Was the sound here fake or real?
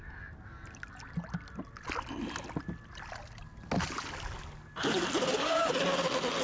real